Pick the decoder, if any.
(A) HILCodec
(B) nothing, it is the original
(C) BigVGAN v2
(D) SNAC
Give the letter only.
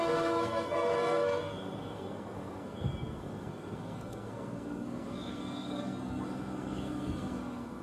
D